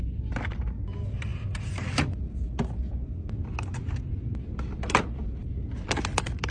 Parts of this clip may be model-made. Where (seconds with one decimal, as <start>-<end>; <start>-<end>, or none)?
none